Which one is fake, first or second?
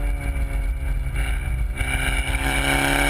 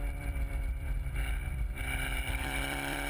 second